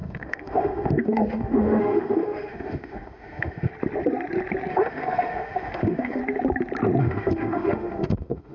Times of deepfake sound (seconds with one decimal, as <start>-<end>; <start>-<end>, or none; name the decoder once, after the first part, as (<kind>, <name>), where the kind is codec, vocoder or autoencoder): 0.0-3.7 (autoencoder, DAC-VAE); 4.7-6.2; 7.0-8.5